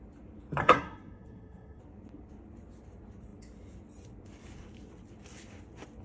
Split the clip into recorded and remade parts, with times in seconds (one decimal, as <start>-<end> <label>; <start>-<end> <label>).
0.0-0.6 recorded; 0.6-1.8 remade; 1.8-6.0 recorded